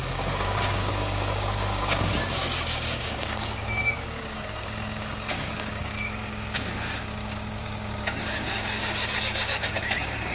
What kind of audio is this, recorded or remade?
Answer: remade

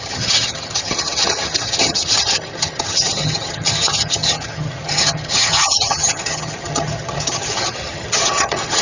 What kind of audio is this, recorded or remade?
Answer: remade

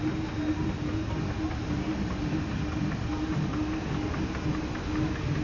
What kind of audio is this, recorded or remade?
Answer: recorded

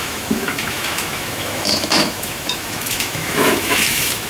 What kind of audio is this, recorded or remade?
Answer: remade